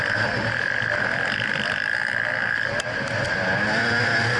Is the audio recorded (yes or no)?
yes